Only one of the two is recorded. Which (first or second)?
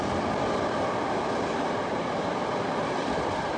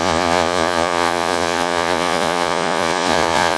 first